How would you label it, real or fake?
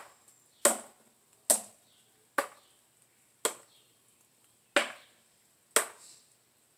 real